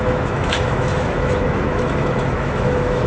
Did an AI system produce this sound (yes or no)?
yes